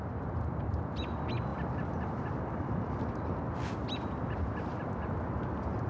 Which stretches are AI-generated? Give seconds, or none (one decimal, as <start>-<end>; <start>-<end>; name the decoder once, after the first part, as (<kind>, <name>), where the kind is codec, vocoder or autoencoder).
none